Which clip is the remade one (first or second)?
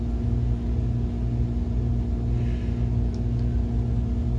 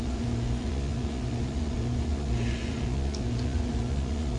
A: second